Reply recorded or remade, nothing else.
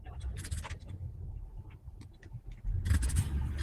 recorded